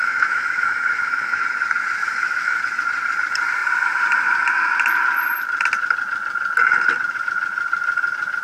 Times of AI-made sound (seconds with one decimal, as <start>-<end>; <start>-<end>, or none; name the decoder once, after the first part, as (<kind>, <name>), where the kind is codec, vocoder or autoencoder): 0.0-1.4 (autoencoder, DAC-VAE); 2.0-2.6